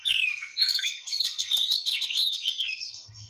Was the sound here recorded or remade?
remade